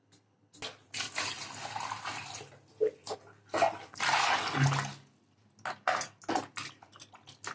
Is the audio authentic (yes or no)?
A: yes